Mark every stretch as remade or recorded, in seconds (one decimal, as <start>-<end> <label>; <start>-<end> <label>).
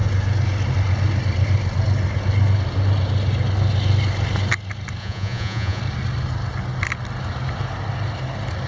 0.0-5.0 recorded; 5.0-5.8 remade; 5.8-8.7 recorded